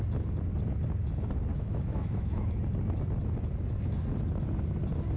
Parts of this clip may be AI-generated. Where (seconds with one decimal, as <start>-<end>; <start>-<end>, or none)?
1.5-2.6